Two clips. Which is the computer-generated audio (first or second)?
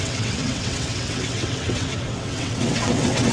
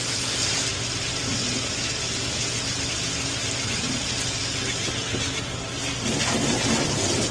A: first